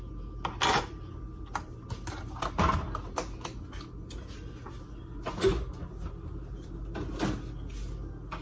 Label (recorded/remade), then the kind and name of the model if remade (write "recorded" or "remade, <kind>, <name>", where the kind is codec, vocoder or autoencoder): recorded